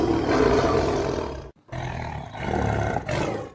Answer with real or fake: real